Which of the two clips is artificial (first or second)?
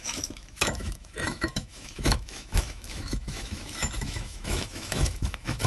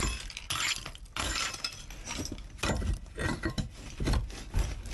first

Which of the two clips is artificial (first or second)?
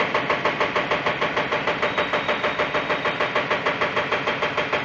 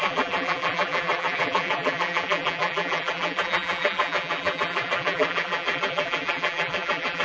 second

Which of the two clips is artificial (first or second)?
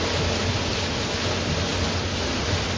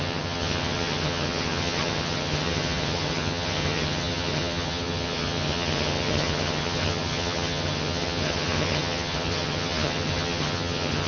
second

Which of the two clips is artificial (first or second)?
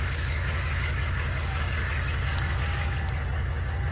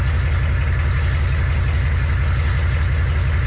first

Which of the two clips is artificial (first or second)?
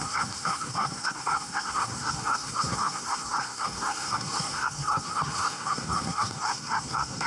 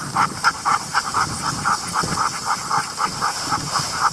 first